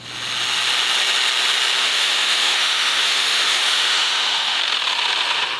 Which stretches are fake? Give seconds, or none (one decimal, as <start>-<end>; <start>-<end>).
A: 1.8-4.6